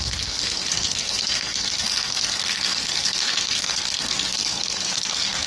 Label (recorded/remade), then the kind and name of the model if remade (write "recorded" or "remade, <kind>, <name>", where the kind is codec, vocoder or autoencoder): remade, codec, SNAC